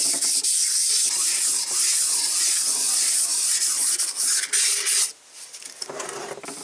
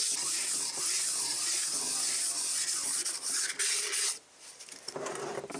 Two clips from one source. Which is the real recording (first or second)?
first